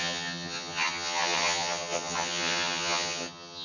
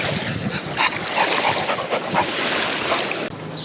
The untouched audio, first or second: second